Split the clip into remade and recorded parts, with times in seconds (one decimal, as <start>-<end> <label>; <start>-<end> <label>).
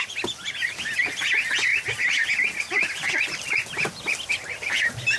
0.0-5.2 recorded